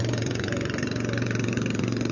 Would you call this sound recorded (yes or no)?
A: no